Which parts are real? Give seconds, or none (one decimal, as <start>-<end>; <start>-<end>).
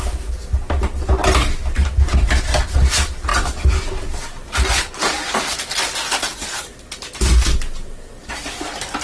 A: 0.0-9.0